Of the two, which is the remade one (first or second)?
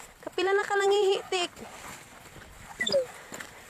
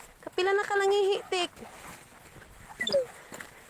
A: first